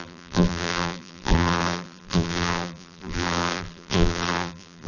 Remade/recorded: remade